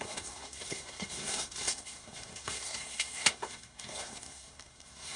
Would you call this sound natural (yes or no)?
no